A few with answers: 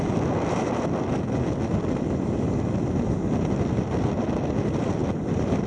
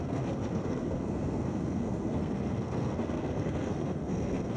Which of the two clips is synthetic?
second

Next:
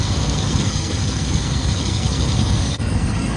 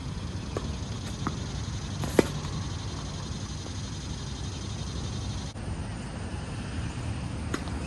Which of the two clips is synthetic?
first